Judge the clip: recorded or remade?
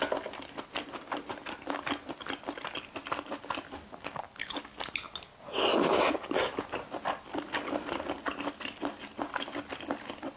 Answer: recorded